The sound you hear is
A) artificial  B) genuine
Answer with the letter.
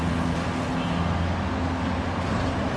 B